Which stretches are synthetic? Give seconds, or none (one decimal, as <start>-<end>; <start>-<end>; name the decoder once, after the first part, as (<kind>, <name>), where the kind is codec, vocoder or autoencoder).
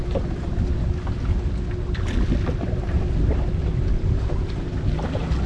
none